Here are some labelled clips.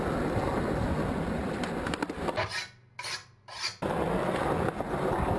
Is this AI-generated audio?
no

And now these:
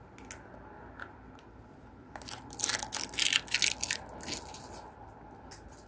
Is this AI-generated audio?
no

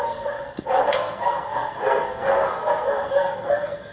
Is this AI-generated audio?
yes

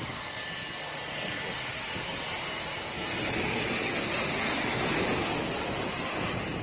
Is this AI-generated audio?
no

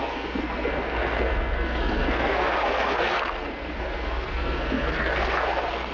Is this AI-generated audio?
yes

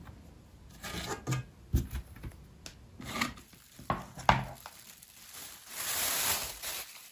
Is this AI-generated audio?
no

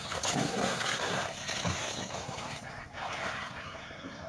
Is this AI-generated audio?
yes